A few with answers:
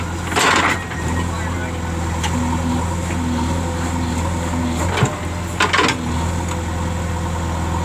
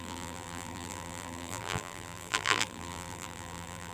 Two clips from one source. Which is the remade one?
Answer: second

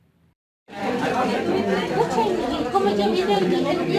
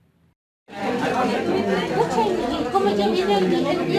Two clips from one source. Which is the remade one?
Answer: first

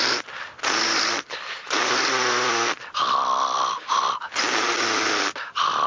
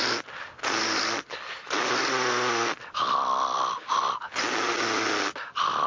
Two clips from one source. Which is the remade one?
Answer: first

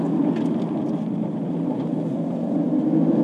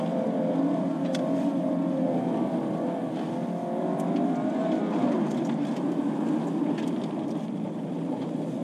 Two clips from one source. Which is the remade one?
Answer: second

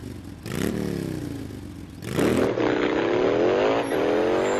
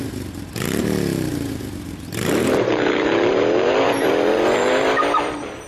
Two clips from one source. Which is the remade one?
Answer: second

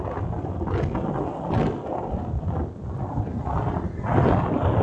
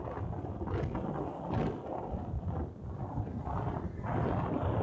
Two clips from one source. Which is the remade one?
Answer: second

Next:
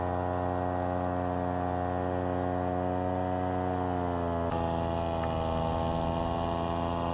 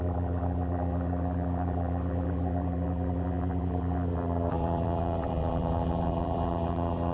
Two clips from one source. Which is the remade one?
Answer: second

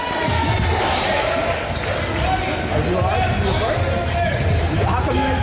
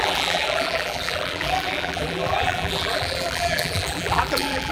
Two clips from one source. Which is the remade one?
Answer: second